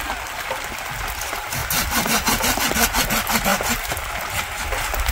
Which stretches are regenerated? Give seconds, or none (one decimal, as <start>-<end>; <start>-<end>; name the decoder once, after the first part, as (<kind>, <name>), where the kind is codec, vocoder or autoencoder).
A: 1.6-2.6 (vocoder, BigVGAN v2); 3.5-4.2